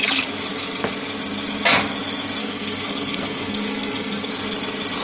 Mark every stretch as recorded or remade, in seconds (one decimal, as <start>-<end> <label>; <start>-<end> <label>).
0.0-2.4 recorded; 2.4-4.3 remade; 4.3-5.0 recorded